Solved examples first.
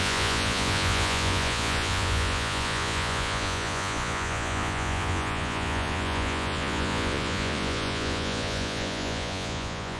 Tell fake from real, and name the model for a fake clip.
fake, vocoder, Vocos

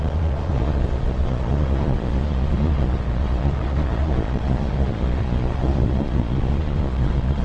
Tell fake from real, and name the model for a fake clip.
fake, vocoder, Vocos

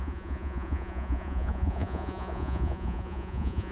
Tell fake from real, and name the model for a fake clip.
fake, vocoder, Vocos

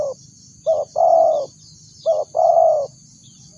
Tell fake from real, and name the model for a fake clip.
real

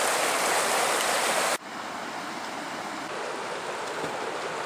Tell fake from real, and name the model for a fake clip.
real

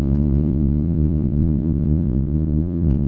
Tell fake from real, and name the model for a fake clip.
fake, vocoder, Vocos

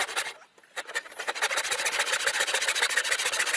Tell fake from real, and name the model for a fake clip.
real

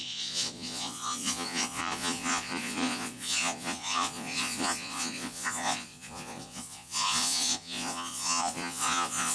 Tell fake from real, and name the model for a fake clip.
fake, vocoder, Vocos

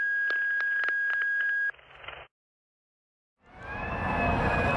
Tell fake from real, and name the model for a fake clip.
real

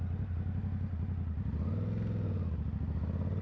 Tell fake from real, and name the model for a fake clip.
real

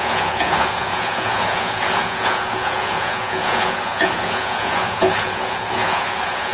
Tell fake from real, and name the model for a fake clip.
fake, vocoder, Vocos